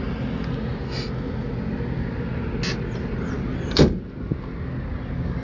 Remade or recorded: recorded